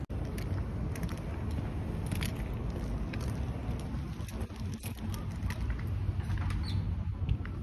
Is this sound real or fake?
real